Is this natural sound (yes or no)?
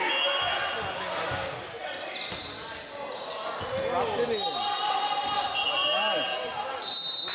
yes